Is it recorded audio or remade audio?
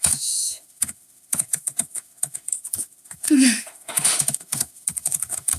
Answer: remade